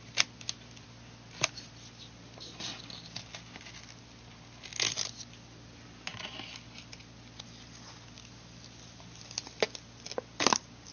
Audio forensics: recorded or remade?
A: recorded